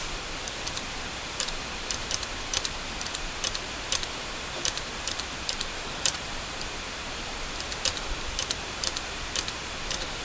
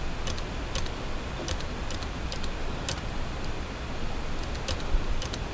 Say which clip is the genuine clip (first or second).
second